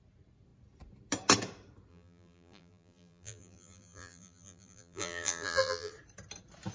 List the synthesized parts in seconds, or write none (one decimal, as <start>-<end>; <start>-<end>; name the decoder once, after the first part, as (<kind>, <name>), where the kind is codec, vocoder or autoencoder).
1.9-5.9 (vocoder, BigVGAN v2)